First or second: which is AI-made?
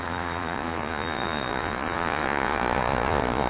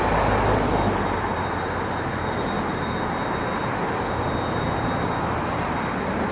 first